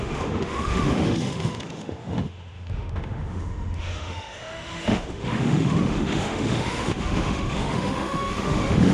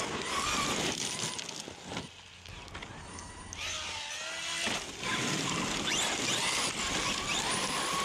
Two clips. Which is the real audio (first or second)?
second